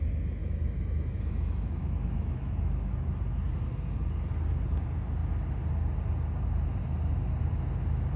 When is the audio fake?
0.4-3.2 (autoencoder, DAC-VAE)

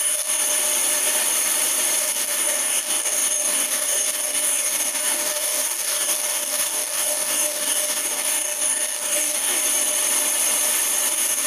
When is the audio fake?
0.0-0.4 (codec, DAC); 2.0-9.6; 11.1-11.5

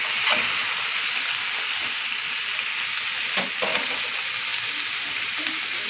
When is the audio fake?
none

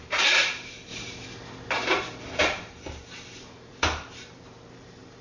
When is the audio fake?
0.0-0.9 (vocoder, BigVGAN v2); 2.4-5.2

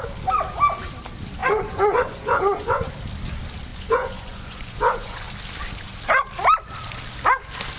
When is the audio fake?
1.4-2.9 (vocoder, Vocos); 3.7-5.3

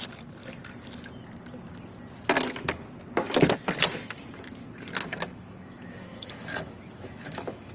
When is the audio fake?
5.1-7.7 (autoencoder, DAC-VAE)